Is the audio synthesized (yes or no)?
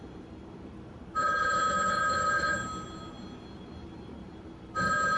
yes